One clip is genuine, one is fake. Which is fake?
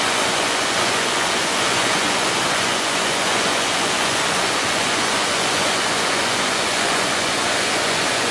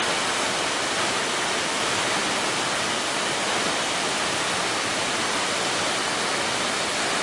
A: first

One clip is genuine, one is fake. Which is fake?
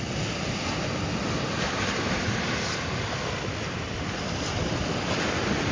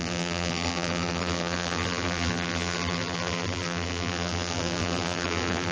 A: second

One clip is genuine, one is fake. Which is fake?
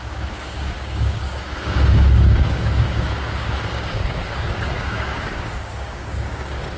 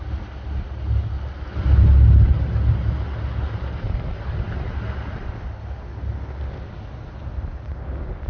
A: first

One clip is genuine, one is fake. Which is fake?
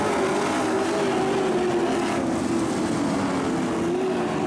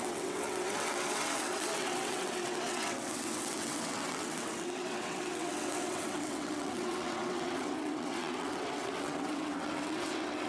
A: second